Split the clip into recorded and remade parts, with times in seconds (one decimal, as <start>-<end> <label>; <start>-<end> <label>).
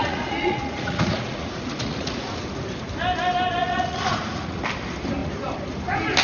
0.0-2.4 remade; 2.4-3.6 recorded; 3.6-4.6 remade; 4.6-6.2 recorded